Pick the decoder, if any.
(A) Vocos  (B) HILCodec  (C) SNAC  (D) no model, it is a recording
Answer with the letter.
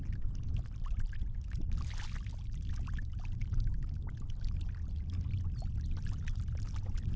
D